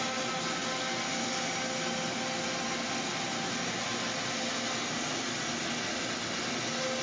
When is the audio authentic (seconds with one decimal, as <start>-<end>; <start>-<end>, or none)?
0.0-7.0